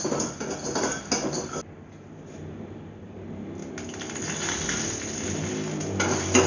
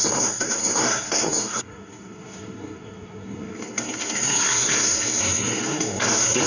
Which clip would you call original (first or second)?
first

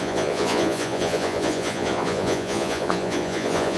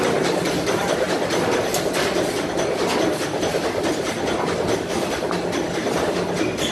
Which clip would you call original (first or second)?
second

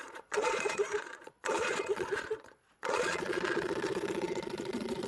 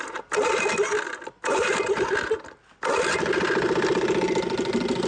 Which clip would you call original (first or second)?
second